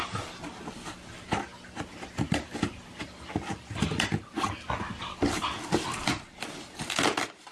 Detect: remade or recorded recorded